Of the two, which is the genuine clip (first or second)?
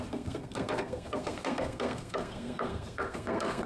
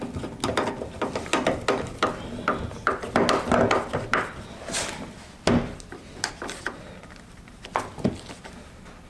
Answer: second